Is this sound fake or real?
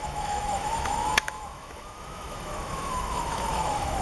fake